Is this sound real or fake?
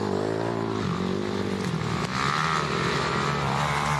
real